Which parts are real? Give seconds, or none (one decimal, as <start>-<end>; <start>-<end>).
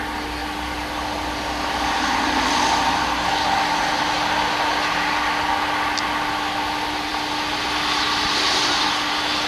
0.0-9.5